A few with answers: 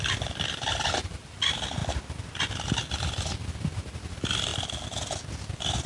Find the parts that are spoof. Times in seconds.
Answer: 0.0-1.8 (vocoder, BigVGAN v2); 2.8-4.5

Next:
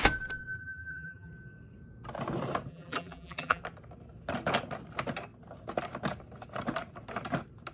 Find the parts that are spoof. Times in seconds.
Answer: 0.6-1.3 (vocoder, BigVGAN v2); 2.7-3.6

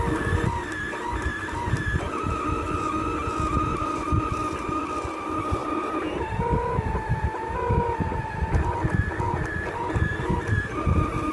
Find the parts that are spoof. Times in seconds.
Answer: 1.3-2.3 (vocoder, BigVGAN v2); 8.1-10.5

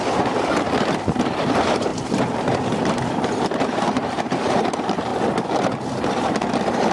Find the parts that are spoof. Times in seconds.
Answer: 0.0-5.1 (vocoder, BigVGAN v2); 6.0-6.9

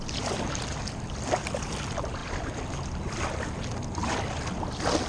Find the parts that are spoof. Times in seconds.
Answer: none

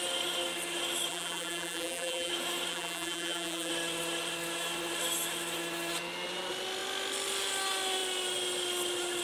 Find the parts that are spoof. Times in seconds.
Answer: 1.1-2.3 (vocoder, BigVGAN v2); 2.7-3.7

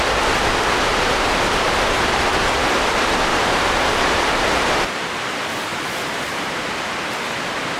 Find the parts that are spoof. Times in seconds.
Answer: 0.9-2.1 (vocoder, BigVGAN v2); 3.3-4.2; 5.7-6.7

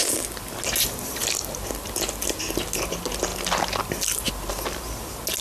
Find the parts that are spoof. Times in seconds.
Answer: none